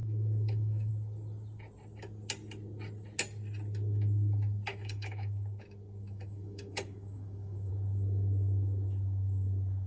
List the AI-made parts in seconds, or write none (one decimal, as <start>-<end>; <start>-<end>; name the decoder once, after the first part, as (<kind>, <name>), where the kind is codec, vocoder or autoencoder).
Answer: 0.0-0.9 (autoencoder, DAC-VAE); 4.7-7.7